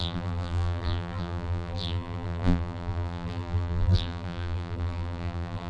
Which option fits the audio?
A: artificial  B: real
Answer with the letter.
A